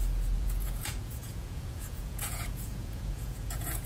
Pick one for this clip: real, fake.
fake